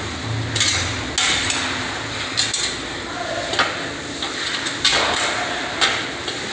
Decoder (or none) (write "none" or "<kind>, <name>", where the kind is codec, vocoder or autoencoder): none